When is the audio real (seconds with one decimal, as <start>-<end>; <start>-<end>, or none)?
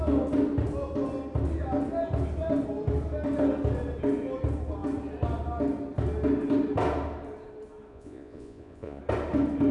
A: 0.0-7.9; 9.0-9.7